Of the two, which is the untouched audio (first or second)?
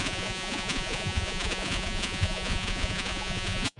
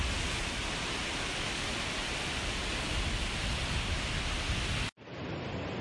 second